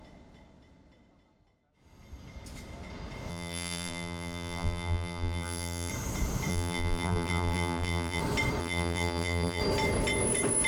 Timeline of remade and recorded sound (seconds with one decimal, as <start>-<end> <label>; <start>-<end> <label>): 0.0-3.3 recorded; 3.3-5.9 remade; 5.9-6.5 recorded; 6.5-8.2 remade; 8.2-8.6 recorded; 8.6-9.6 remade; 9.6-10.7 recorded